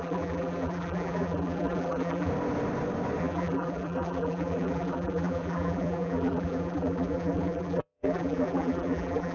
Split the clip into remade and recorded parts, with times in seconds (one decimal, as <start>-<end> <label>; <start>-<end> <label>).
0.0-2.3 remade; 2.3-3.2 recorded; 3.2-9.3 remade